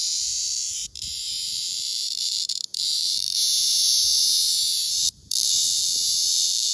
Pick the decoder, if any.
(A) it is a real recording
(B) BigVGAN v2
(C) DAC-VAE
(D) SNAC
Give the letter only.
B